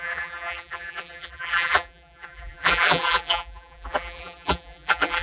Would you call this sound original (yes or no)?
no